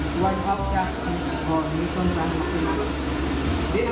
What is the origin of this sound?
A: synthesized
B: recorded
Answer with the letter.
B